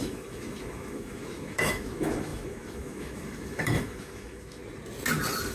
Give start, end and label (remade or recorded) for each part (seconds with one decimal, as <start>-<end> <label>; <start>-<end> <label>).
0.0-4.6 remade; 4.6-5.5 recorded